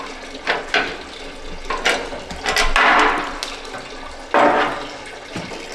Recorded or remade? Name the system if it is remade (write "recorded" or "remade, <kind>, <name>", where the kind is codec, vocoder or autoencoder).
recorded